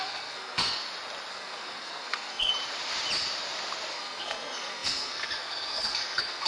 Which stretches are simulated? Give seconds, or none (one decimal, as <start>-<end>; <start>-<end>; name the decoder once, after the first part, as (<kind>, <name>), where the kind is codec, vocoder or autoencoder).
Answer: 0.0-0.6 (codec, SNAC); 1.3-2.5; 3.9-6.5